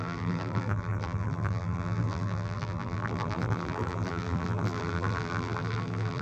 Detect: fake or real fake